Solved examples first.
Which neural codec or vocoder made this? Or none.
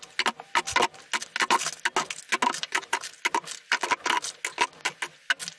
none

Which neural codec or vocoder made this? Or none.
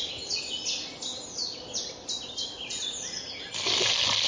none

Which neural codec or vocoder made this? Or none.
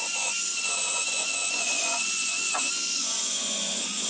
vocoder, Vocos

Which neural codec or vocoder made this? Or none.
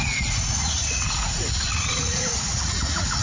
vocoder, Vocos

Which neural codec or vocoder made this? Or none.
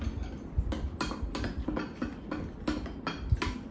none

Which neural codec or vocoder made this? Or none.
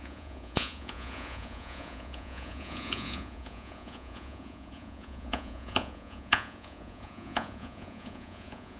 vocoder, Vocos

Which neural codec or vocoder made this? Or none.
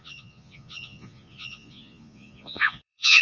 vocoder, Vocos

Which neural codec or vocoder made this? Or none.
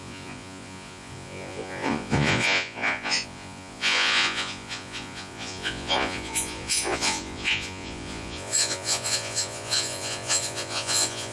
vocoder, Vocos